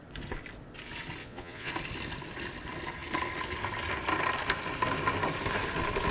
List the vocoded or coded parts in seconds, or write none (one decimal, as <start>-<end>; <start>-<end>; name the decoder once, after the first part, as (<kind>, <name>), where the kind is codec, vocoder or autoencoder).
1.2-1.7 (vocoder, Vocos)